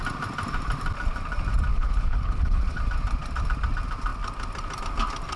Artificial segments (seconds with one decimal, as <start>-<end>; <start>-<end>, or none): 1.7-2.8